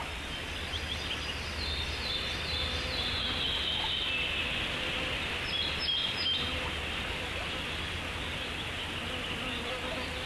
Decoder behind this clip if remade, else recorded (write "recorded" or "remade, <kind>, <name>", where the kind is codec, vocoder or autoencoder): recorded